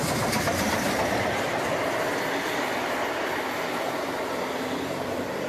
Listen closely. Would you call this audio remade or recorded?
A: recorded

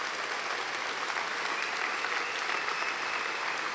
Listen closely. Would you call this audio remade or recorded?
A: recorded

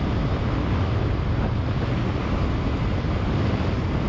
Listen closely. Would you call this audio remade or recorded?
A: recorded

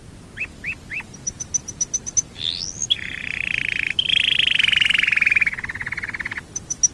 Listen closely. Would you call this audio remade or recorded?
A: recorded